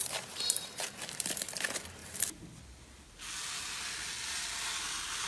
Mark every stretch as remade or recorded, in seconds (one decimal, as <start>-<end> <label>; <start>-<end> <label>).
0.0-1.4 remade; 1.4-2.0 recorded; 2.0-2.6 remade; 2.6-5.3 recorded

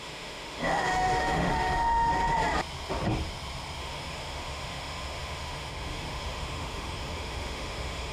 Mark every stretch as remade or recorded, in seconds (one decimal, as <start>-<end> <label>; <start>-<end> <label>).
0.0-2.1 remade; 2.1-3.8 recorded; 3.8-8.1 remade

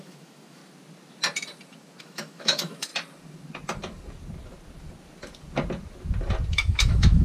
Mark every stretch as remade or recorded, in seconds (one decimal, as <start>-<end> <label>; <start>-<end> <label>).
0.0-0.6 remade; 0.6-2.0 recorded; 2.0-2.9 remade; 2.9-6.5 recorded; 6.5-7.2 remade

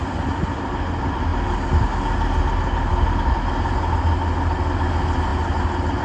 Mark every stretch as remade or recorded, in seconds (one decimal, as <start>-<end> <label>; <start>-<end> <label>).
0.0-6.0 recorded

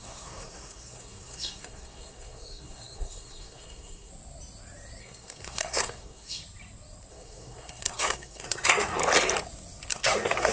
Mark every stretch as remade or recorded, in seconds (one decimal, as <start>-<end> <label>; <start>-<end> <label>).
0.0-4.1 remade; 4.1-5.0 recorded; 5.0-6.4 remade; 6.4-7.1 recorded; 7.1-9.0 remade; 9.0-9.9 recorded; 9.9-10.5 remade

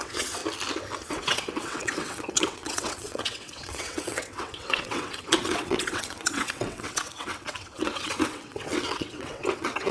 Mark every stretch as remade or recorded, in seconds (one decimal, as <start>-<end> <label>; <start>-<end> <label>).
0.0-0.4 remade; 0.4-1.1 recorded; 1.1-9.9 remade